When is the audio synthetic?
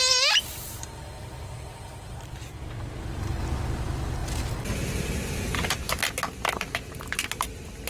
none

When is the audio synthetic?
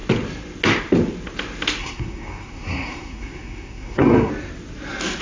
1.8-4.3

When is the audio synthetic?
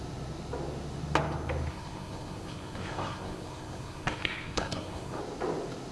1.7-5.2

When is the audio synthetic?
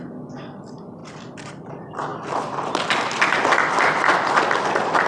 none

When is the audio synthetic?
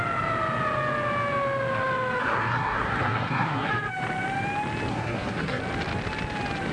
2.2-3.7; 4.9-5.6